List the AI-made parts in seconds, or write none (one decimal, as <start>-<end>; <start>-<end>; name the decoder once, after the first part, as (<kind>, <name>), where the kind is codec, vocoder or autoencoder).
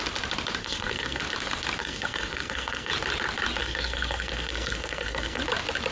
0.6-1.2 (codec, SNAC); 1.8-2.9; 3.6-5.4